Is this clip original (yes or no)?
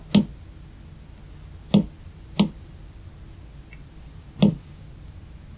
yes